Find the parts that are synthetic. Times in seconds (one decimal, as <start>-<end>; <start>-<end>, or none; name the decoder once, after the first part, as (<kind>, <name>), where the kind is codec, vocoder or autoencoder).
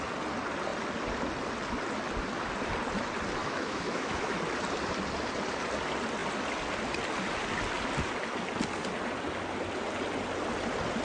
3.4-4.4 (autoencoder, DAC-VAE)